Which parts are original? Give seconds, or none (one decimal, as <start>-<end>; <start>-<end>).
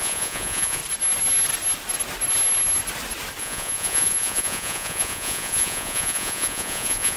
0.8-3.4